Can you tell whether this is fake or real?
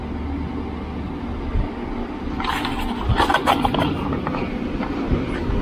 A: real